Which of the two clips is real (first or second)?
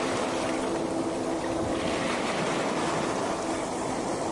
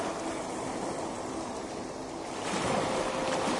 first